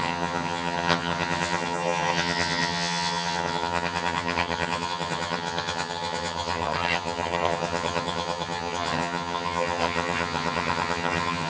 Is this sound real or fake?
fake